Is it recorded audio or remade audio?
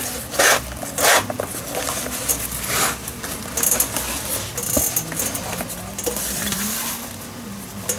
recorded